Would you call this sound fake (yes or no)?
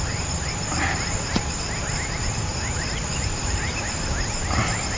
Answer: no